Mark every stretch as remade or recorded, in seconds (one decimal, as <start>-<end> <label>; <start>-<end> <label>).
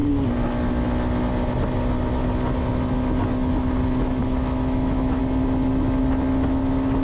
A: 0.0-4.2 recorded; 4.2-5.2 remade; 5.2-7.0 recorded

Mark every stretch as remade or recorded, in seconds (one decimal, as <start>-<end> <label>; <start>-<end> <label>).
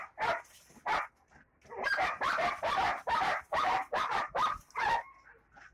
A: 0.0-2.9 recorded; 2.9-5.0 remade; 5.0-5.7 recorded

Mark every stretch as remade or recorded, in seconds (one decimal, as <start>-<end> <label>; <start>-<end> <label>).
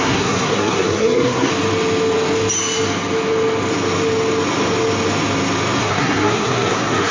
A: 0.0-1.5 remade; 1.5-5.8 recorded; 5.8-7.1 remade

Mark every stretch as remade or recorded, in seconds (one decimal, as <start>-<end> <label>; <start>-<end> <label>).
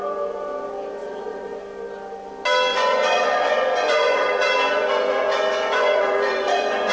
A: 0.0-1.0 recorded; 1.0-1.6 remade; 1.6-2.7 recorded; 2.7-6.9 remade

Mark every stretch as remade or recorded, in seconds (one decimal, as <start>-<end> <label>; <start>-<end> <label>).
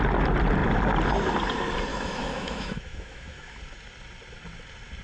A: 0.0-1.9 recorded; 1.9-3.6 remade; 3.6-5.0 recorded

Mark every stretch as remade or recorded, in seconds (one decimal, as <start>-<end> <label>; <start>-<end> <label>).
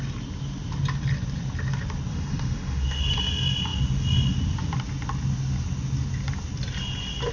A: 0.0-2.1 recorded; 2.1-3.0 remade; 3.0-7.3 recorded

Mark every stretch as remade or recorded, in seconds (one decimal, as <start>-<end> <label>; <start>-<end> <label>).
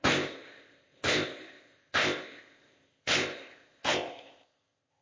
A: 0.0-5.0 remade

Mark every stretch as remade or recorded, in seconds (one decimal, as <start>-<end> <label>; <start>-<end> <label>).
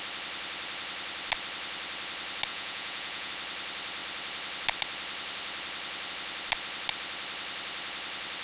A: 0.0-2.5 recorded; 2.5-3.3 remade; 3.3-8.4 recorded